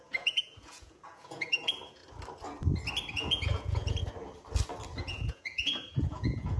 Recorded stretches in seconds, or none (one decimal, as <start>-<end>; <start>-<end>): 2.0-3.1; 4.0-5.0